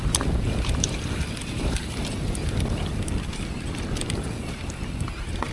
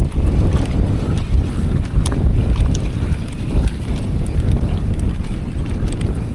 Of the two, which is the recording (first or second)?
first